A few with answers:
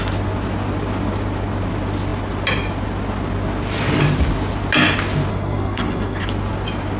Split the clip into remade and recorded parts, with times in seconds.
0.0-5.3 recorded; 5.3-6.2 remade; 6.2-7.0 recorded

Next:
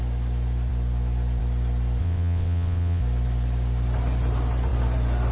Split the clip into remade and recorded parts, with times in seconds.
0.0-2.0 recorded; 2.0-3.0 remade; 3.0-5.3 recorded

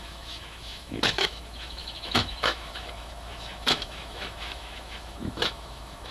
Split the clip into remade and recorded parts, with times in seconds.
0.0-6.1 remade